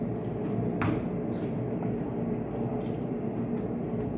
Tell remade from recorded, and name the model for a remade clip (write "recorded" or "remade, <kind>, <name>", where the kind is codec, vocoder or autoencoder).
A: recorded